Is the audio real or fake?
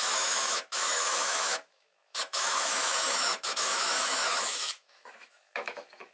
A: fake